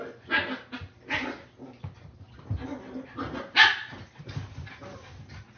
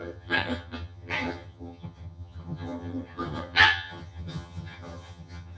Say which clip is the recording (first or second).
first